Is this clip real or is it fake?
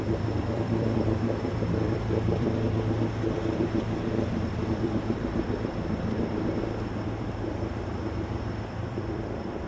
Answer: fake